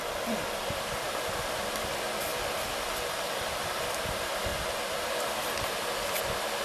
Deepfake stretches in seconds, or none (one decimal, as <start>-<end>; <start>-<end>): 0.0-2.3; 3.3-4.5; 5.0-6.6